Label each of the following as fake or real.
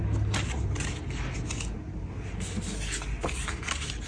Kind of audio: real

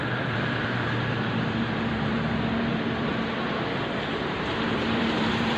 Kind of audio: fake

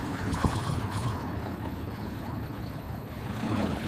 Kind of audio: fake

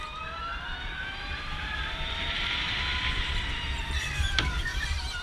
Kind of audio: fake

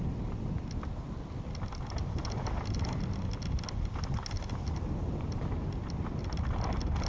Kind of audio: real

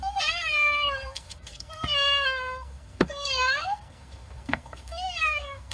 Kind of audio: fake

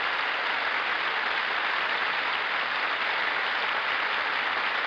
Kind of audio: real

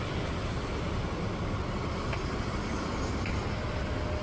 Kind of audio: real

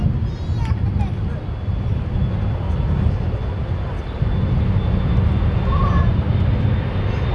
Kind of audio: real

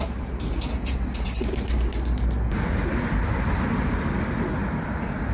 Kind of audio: real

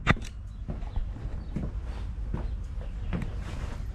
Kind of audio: real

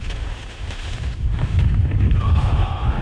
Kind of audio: fake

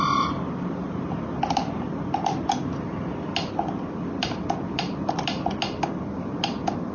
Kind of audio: real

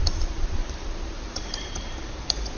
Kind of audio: fake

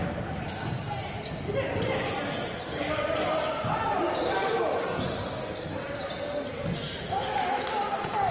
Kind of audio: real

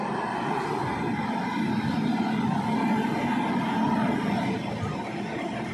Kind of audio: real